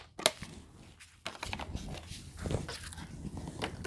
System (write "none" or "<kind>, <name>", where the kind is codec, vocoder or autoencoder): none